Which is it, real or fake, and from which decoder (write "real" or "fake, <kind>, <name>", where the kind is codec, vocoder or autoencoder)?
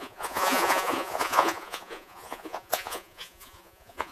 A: fake, vocoder, Vocos